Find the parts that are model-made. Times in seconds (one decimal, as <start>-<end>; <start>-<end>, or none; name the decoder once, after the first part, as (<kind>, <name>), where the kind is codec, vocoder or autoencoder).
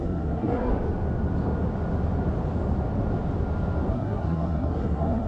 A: 0.0-0.7 (codec, SNAC); 3.9-5.3